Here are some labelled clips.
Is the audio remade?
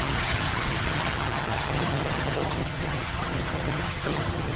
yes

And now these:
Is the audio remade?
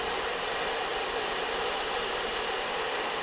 no